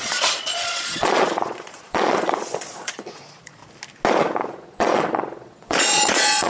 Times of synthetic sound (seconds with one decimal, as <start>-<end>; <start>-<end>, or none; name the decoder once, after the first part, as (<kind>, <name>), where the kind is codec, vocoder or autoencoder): 0.0-3.6 (vocoder, Vocos); 4.2-6.5